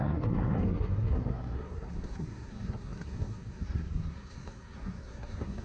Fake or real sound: fake